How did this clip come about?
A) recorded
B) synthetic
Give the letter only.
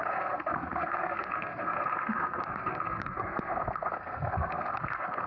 B